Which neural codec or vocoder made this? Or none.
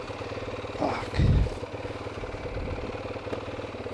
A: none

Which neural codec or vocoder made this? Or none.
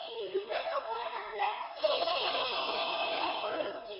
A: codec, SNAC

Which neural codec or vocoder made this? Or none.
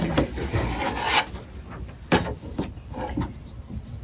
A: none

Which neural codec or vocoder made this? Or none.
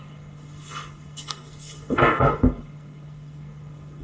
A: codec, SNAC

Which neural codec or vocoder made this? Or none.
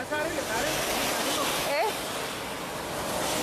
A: none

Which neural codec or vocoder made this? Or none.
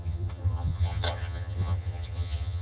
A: vocoder, HiFi-GAN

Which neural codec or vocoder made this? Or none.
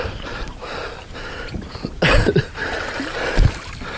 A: none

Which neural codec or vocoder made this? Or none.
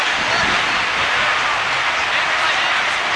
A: none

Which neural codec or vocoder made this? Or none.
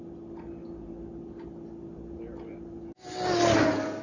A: none